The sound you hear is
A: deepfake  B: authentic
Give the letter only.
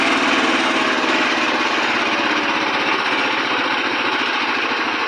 B